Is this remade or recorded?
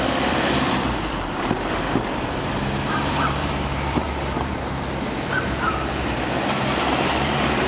remade